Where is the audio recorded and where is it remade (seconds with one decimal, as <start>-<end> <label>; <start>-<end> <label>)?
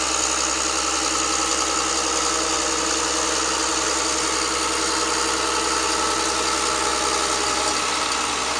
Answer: 0.0-8.6 recorded